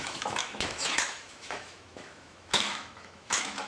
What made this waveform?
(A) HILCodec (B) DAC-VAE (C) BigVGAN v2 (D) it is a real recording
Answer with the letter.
B